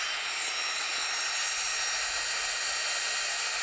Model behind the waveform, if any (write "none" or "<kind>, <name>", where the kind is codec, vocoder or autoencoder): none